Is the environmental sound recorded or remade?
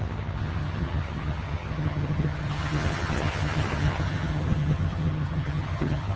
remade